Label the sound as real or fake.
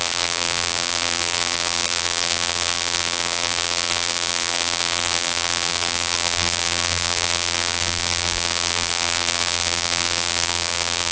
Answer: fake